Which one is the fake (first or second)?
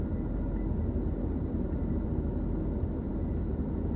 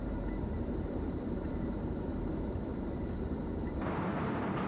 second